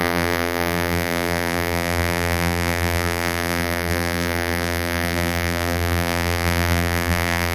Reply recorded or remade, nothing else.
remade